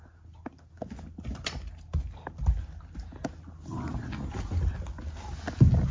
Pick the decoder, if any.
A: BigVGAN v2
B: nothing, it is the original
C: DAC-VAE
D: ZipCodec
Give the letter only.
B